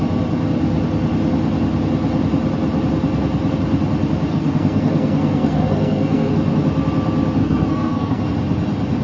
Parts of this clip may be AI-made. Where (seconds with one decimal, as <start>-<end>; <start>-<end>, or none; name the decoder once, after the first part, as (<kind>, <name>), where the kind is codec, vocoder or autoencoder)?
4.3-6.3 (codec, SNAC); 7.4-8.2